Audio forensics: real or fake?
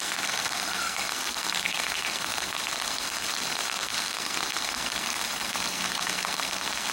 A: fake